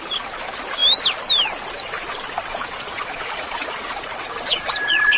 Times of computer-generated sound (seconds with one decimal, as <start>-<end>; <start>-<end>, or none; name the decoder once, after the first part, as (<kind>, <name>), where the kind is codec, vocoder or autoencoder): 2.5-5.2 (vocoder, Vocos)